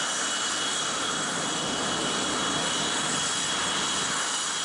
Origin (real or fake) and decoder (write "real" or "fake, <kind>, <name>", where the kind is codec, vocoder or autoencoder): real